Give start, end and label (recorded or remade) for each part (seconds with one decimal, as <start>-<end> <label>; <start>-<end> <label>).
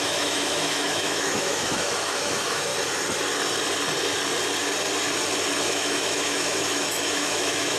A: 0.0-2.7 remade; 2.7-5.6 recorded; 5.6-7.8 remade